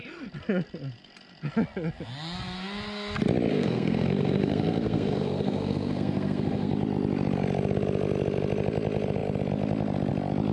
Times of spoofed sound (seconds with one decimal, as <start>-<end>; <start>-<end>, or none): 3.5-6.7